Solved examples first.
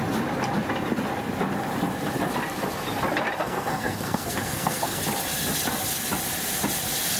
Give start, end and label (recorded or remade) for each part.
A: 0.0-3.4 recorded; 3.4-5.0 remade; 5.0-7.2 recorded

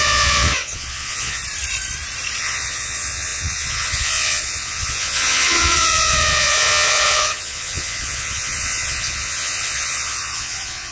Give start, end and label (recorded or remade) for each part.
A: 0.0-1.4 remade; 1.4-2.4 recorded; 2.4-10.9 remade

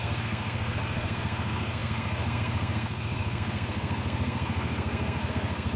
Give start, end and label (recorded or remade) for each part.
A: 0.0-5.8 remade

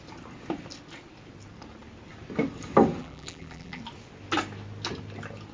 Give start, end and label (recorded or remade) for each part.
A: 0.0-3.0 recorded; 3.0-3.8 remade; 3.8-5.5 recorded